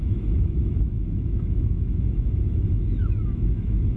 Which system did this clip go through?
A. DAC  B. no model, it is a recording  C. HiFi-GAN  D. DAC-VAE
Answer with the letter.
D